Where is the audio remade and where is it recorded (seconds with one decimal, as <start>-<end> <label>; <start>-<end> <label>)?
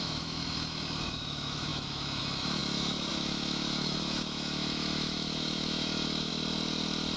0.0-6.3 remade; 6.3-7.2 recorded